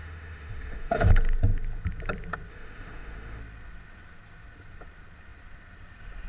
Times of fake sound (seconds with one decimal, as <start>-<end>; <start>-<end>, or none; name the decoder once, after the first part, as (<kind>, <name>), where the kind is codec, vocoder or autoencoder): 0.0-1.1 (autoencoder, DAC-VAE); 2.5-3.4